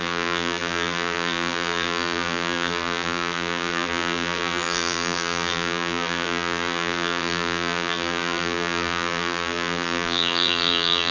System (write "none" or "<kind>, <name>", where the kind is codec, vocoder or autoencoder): vocoder, BigVGAN v2